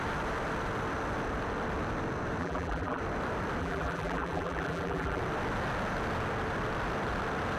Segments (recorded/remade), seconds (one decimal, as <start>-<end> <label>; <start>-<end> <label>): 0.0-2.4 recorded; 2.4-3.0 remade; 3.0-3.6 recorded; 3.6-5.2 remade; 5.2-7.6 recorded